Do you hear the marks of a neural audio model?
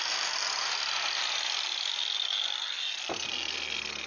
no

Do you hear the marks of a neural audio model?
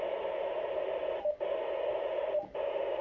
no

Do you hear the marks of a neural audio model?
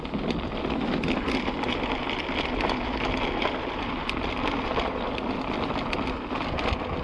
no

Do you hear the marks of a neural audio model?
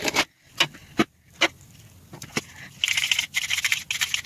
no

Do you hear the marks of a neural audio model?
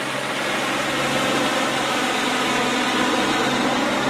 no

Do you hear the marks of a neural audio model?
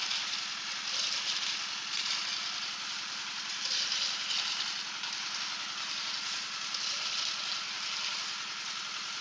no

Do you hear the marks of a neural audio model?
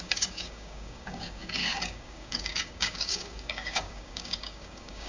yes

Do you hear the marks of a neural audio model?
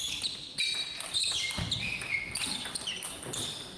no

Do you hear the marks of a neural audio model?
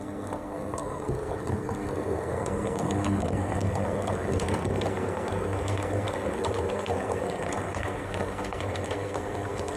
yes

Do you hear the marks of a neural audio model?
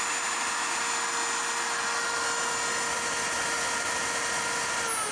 no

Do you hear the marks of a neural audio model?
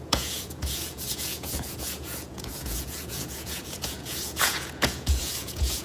yes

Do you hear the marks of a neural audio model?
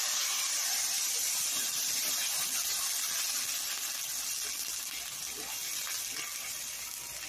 no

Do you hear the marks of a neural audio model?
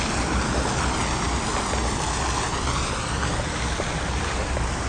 no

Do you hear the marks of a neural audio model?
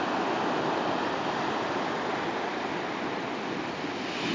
no